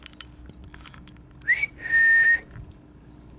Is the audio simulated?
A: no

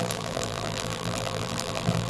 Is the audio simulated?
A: yes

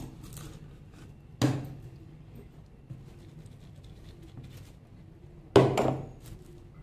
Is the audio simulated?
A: no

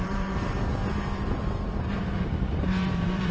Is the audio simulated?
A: yes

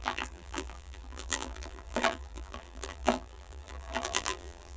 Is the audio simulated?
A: yes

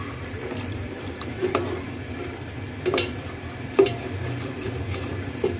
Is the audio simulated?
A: yes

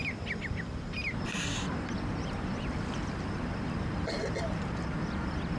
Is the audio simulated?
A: no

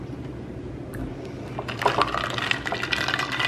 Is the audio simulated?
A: no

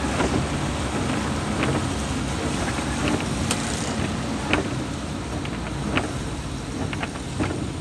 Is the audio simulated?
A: no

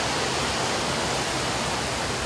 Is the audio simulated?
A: no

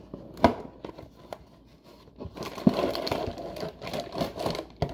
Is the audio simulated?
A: no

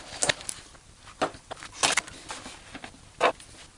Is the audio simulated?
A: no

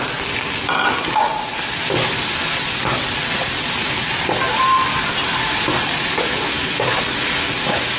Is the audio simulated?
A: no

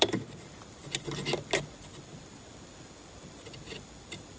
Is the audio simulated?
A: no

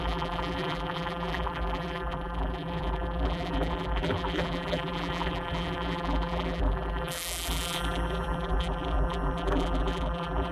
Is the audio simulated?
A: yes